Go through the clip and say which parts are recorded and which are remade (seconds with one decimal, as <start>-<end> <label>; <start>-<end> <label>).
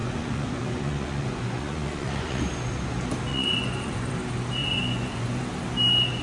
0.0-2.4 remade; 2.4-3.3 recorded; 3.3-4.1 remade; 4.1-4.6 recorded; 4.6-5.4 remade; 5.4-6.2 recorded